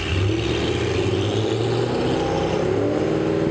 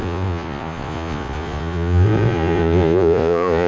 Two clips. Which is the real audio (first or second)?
first